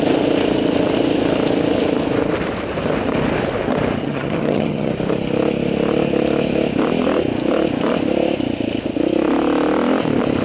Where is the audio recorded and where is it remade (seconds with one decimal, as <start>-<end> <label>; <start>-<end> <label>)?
0.0-4.0 recorded; 4.0-4.9 remade; 4.9-10.4 recorded